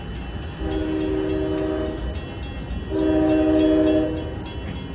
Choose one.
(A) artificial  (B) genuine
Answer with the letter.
B